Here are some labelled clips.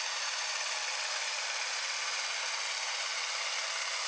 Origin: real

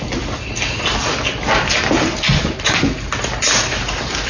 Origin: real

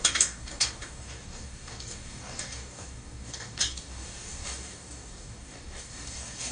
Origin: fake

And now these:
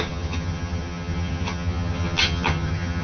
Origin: fake